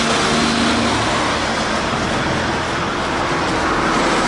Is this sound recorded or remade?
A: recorded